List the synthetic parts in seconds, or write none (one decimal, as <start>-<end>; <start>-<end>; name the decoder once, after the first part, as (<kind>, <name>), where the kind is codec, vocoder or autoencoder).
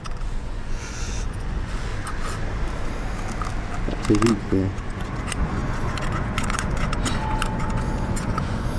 0.0-1.9 (vocoder, Vocos); 4.4-8.8